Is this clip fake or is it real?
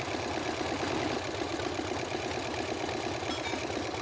real